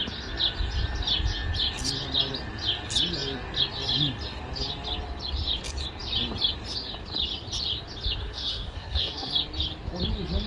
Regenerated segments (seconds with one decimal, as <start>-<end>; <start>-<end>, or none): 8.2-9.3